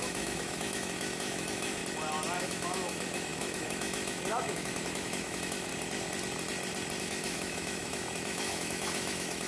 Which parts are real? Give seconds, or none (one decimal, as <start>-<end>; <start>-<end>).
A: 1.8-2.4; 5.7-7.0